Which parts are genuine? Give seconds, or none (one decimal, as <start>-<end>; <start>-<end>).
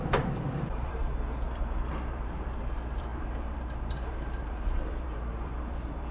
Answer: 1.0-1.9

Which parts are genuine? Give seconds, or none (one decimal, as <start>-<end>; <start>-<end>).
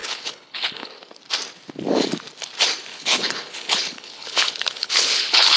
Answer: 0.9-2.9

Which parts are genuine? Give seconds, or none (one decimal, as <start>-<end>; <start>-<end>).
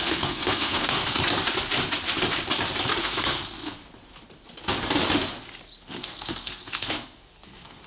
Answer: 1.2-3.0; 3.8-5.8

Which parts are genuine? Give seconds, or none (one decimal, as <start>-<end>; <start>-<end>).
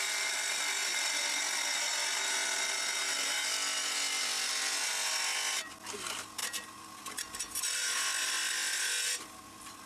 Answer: 0.0-9.9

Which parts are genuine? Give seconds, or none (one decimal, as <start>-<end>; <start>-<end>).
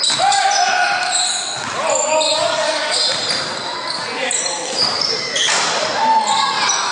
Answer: 0.0-2.3; 3.0-6.9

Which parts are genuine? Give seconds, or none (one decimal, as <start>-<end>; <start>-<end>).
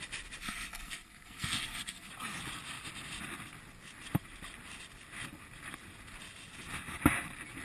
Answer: 0.0-0.4; 2.1-7.6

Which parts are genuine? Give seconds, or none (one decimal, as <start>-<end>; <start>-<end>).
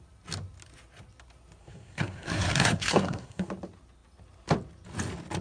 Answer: 0.0-1.6; 3.5-5.4